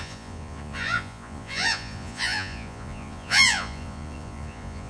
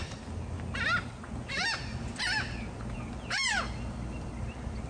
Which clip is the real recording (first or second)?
second